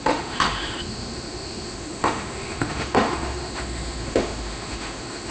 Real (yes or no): no